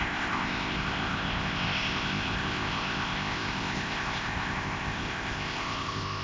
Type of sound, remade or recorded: remade